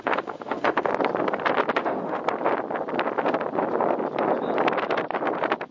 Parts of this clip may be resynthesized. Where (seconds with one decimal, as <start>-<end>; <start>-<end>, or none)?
0.0-0.9; 1.8-2.2